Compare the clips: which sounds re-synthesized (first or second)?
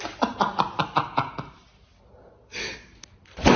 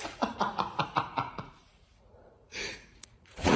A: second